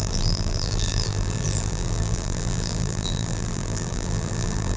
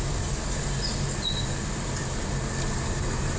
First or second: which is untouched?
second